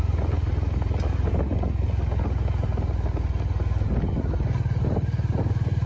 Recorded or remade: recorded